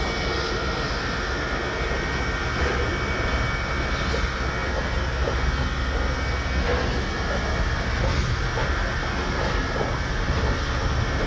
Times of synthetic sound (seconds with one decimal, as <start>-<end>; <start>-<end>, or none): none